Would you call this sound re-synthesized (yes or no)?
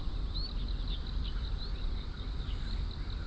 no